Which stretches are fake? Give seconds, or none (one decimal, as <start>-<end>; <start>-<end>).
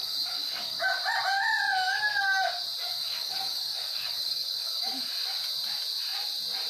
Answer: 0.0-0.8; 2.9-5.1